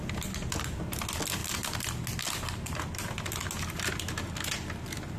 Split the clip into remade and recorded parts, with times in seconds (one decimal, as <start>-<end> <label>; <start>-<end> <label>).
0.0-5.2 recorded